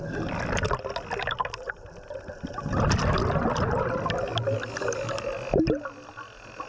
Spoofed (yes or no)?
no